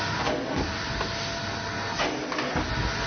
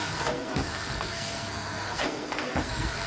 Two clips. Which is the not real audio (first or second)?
second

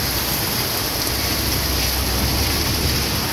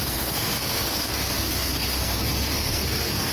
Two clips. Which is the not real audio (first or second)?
second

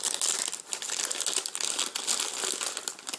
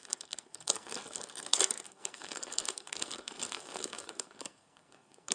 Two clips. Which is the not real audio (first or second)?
second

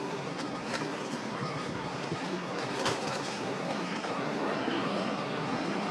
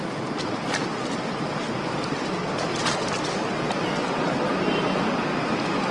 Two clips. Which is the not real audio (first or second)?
first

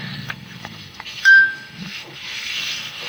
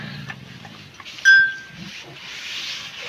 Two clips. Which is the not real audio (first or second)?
first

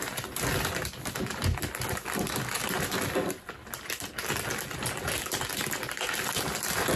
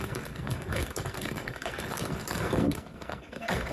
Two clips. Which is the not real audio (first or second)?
second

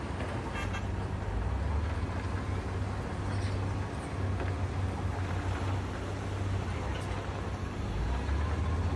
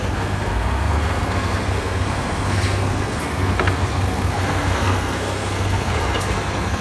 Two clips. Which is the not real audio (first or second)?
second